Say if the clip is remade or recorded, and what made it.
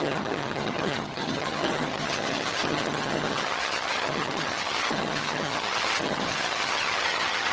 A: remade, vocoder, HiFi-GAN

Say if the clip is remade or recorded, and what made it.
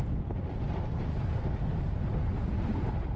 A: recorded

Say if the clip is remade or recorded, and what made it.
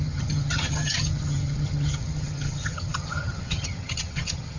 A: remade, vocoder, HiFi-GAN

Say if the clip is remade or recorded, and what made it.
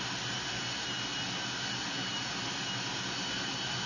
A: recorded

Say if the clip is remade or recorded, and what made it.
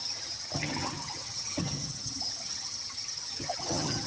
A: remade, vocoder, HiFi-GAN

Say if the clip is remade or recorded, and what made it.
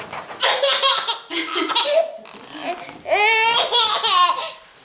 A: recorded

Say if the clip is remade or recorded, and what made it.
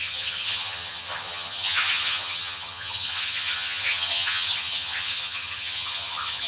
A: remade, vocoder, HiFi-GAN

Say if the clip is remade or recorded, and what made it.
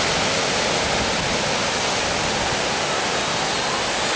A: recorded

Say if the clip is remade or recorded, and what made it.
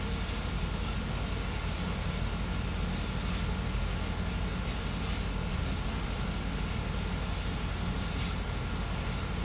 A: recorded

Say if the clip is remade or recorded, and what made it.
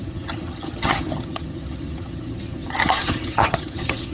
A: remade, vocoder, HiFi-GAN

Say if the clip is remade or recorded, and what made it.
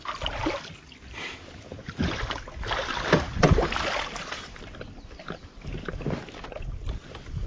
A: recorded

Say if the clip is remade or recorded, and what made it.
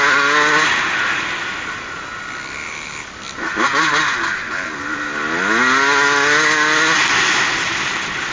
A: recorded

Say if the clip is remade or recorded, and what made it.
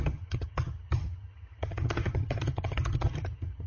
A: remade, vocoder, HiFi-GAN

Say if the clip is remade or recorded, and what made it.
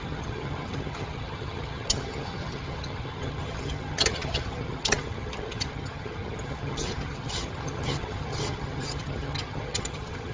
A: remade, vocoder, HiFi-GAN